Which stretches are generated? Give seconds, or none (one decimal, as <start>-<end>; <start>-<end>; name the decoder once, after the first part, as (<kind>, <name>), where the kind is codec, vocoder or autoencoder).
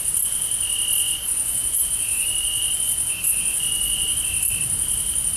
1.0-4.2 (vocoder, Vocos)